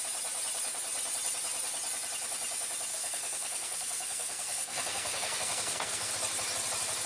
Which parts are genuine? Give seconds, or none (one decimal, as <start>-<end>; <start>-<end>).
0.0-2.9; 6.1-7.1